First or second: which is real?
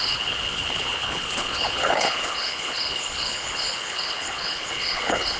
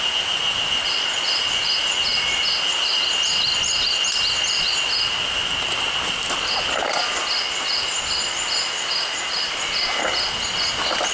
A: second